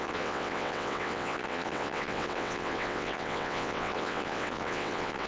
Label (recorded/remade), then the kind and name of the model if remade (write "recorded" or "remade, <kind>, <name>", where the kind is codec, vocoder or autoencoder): remade, vocoder, WaveNeXt